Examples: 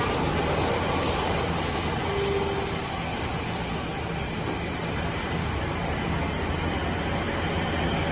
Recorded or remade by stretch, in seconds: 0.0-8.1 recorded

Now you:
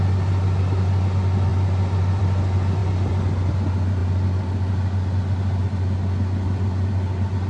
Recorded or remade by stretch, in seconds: 0.0-7.5 recorded